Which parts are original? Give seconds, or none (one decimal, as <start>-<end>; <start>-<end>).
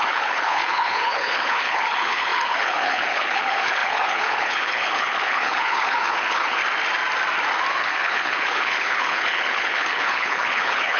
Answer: 6.6-7.7